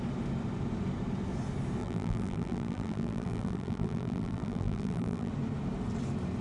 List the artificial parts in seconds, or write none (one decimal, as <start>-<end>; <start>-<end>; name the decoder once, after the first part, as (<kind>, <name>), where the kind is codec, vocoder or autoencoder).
1.8-5.3 (vocoder, BigVGAN v2)